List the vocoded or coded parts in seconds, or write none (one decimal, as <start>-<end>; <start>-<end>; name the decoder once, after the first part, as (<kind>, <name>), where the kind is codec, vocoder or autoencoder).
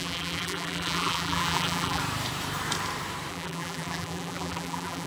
0.0-2.0 (vocoder, BigVGAN v2); 3.3-5.1